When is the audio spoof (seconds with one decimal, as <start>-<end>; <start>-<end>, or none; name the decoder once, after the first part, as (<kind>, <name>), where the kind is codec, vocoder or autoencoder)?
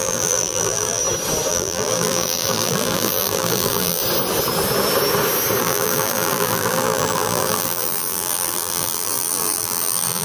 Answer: 0.0-1.0 (vocoder, BigVGAN v2); 1.5-4.0; 5.6-10.2